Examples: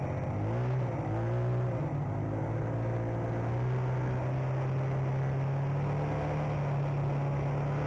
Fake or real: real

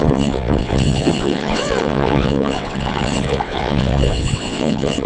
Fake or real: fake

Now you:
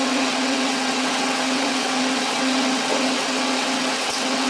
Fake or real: fake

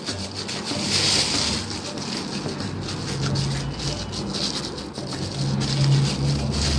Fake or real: real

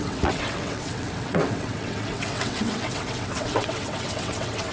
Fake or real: fake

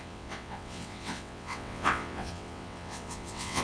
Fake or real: fake